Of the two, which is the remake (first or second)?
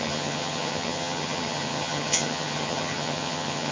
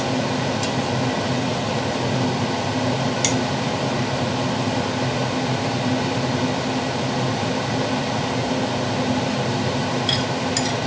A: first